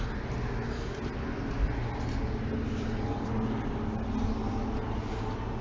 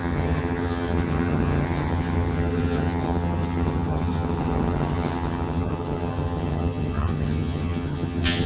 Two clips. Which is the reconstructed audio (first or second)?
second